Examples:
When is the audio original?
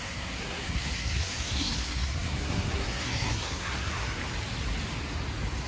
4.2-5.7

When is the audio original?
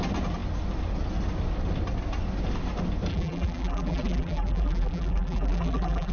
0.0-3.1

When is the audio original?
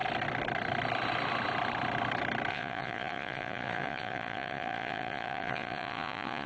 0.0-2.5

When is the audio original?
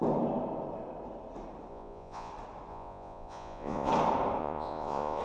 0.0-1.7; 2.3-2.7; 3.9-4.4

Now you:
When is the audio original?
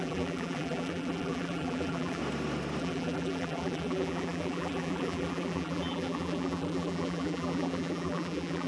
2.2-2.8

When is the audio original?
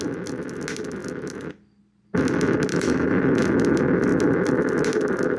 0.0-2.7; 3.2-5.4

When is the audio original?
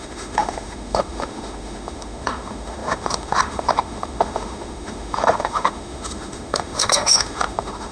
none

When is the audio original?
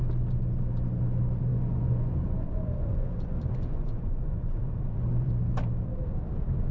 0.0-1.5; 5.3-6.7